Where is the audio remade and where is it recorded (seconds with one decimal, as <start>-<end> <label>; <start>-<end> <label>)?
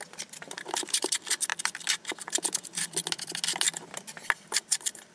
0.0-1.5 remade; 1.5-4.6 recorded; 4.6-5.1 remade